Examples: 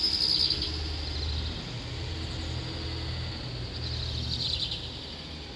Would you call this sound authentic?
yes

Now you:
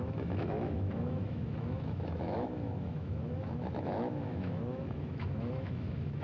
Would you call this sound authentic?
no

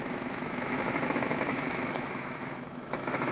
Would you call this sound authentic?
no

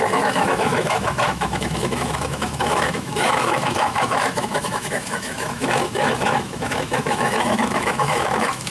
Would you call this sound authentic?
no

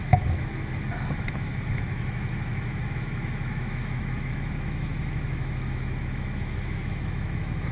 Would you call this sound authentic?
no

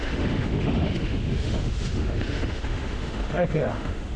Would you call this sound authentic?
no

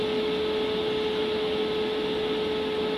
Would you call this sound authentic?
yes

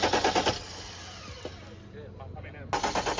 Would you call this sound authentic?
yes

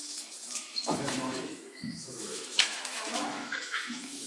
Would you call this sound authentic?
no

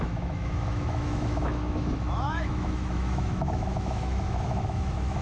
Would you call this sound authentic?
no